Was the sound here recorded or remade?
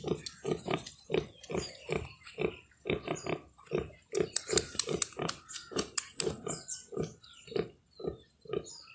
recorded